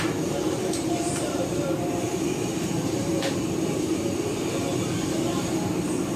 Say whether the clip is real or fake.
fake